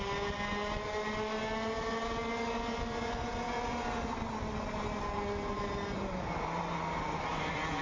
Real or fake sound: real